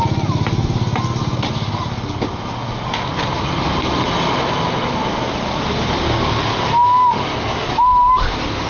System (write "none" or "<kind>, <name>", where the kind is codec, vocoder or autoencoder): none